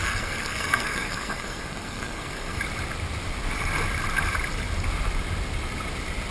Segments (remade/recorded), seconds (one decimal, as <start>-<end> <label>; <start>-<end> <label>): 0.0-2.6 remade; 2.6-6.3 recorded